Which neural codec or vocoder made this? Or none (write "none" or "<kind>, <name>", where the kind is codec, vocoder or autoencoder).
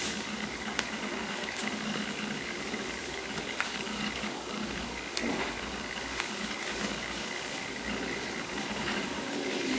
codec, DAC